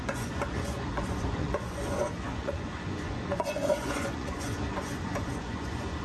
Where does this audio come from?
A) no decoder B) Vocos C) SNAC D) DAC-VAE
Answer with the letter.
B